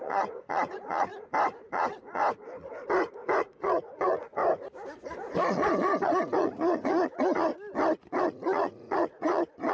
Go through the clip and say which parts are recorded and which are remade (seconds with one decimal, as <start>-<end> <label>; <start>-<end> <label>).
0.0-1.1 remade; 1.1-1.7 recorded; 1.7-2.2 remade; 2.2-3.4 recorded; 3.4-4.4 remade; 4.4-5.0 recorded; 5.0-7.5 remade; 7.5-8.2 recorded; 8.2-9.7 remade